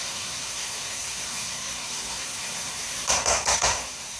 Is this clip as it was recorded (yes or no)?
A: no